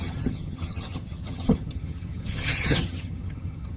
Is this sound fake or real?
fake